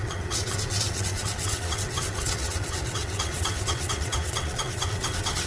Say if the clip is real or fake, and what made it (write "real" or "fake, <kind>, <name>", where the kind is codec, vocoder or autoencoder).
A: fake, vocoder, WaveNeXt